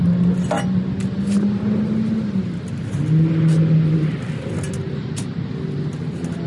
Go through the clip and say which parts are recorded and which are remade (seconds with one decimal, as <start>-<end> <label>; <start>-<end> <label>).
0.0-6.5 recorded